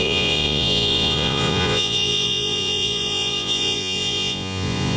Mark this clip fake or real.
fake